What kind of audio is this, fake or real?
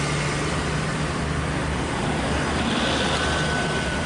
real